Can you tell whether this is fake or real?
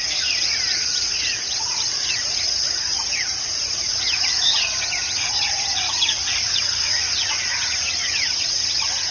fake